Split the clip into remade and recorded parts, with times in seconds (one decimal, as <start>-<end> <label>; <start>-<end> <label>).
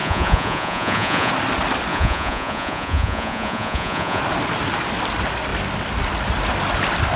0.0-1.3 remade; 1.3-1.9 recorded; 1.9-4.2 remade; 4.2-7.2 recorded